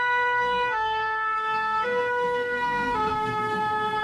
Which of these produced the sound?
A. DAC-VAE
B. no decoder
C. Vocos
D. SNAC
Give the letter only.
D